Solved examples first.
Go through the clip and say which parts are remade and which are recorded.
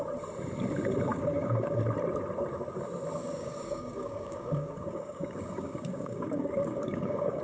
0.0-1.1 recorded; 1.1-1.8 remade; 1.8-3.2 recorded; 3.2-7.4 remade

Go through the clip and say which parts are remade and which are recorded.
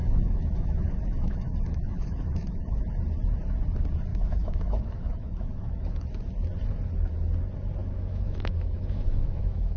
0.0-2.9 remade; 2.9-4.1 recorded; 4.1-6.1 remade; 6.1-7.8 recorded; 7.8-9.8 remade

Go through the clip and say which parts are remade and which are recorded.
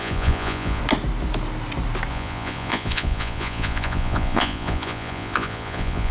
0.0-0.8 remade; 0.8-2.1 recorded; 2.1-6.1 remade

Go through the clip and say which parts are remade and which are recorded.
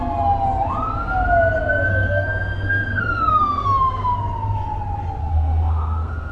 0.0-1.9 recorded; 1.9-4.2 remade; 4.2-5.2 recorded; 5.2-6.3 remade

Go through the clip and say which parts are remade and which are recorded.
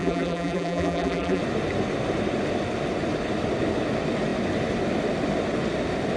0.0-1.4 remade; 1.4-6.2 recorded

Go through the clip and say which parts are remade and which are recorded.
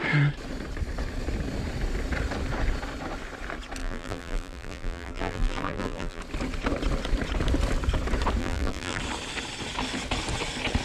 0.0-3.8 recorded; 3.8-6.2 remade; 6.2-8.4 recorded; 8.4-9.0 remade; 9.0-10.8 recorded